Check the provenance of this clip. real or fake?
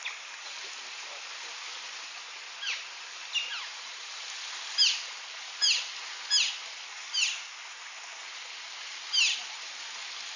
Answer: real